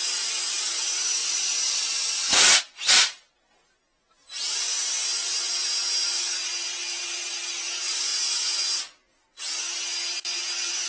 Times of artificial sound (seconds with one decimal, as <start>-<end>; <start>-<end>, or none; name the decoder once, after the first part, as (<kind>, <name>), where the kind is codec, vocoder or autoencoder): 1.2-2.6 (vocoder, Vocos)

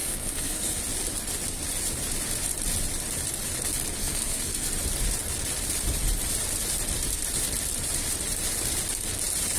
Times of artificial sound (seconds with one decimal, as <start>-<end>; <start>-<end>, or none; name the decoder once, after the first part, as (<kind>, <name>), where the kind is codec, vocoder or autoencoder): 0.0-0.8 (codec, SNAC); 4.0-4.7

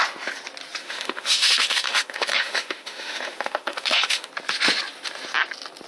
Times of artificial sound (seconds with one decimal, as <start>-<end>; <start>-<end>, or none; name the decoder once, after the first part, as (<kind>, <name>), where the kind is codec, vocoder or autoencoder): 0.8-4.3 (autoencoder, DAC-VAE)

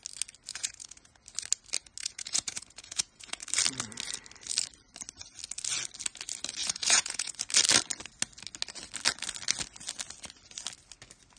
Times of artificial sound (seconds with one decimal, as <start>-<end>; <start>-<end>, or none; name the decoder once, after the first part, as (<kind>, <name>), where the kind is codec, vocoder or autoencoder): 0.5-1.2 (vocoder, Vocos); 2.0-3.4; 6.6-7.3